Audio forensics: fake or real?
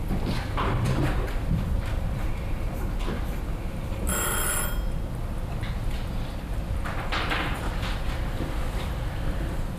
real